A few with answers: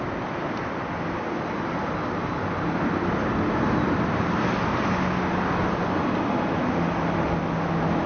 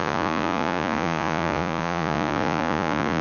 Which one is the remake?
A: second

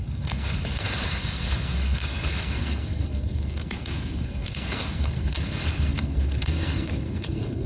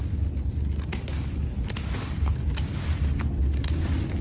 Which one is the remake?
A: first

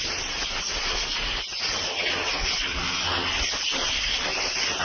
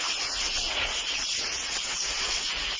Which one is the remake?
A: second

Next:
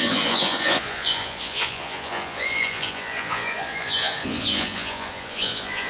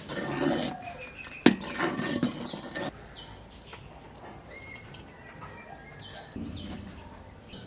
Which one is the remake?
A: first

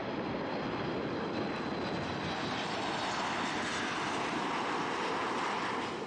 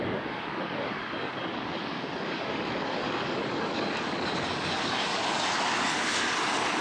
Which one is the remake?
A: second